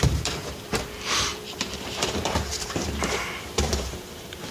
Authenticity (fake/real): fake